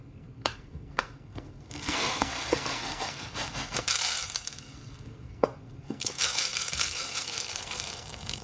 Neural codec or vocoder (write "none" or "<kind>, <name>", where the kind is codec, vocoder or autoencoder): codec, SNAC